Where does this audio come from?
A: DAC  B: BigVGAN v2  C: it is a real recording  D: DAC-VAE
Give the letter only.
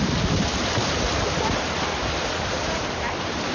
C